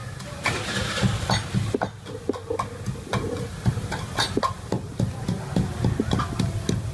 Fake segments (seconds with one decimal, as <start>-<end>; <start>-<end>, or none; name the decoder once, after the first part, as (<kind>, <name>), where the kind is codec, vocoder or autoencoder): none